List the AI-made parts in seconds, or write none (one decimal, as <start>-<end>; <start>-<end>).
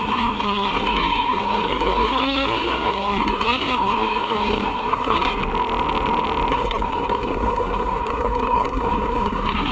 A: 0.0-5.4; 6.5-9.7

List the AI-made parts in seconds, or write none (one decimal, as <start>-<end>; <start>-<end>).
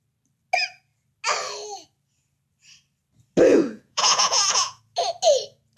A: 3.5-4.8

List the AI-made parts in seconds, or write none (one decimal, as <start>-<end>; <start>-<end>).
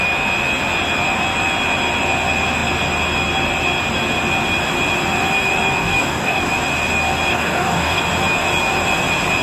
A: 5.8-6.5; 7.3-8.0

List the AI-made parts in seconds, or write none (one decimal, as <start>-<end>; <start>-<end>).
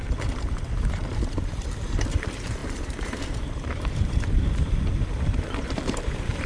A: 0.8-6.5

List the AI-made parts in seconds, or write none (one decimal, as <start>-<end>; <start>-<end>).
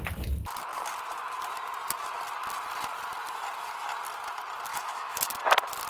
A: 4.7-5.3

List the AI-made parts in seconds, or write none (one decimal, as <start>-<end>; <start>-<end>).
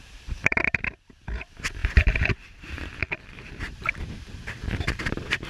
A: 0.0-5.5